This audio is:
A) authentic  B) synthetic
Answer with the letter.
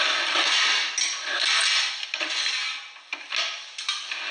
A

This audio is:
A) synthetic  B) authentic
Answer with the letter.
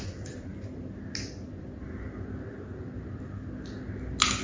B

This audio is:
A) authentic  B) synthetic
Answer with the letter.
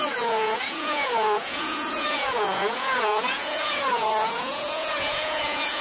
B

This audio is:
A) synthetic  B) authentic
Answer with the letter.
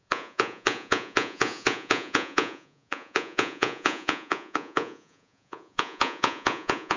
A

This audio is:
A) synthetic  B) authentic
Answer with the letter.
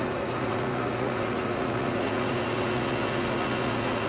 A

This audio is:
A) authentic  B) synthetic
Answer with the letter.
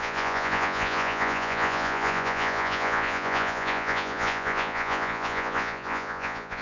B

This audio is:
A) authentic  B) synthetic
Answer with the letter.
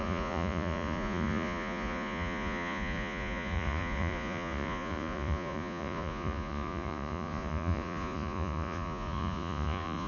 B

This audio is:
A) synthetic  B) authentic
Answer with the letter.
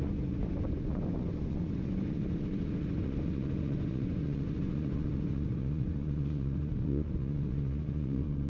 A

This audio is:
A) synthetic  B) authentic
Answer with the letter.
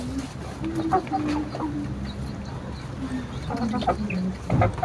B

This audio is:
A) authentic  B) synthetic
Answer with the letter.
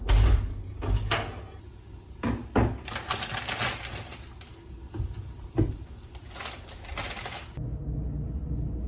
A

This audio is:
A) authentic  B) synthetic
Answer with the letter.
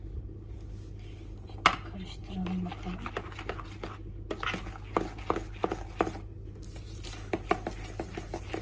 A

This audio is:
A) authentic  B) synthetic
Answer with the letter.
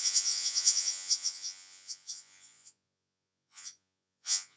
B